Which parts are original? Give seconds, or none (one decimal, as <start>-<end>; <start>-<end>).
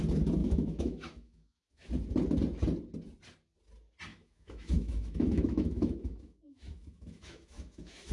0.0-0.4; 1.9-4.1